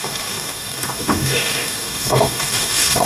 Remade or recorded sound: remade